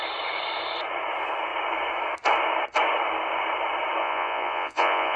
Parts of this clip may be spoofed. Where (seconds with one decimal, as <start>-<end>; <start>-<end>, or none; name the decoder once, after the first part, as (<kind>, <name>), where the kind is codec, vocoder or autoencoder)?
4.0-5.2 (vocoder, Vocos)